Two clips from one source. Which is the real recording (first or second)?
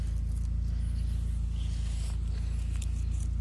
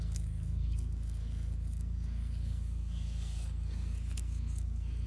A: first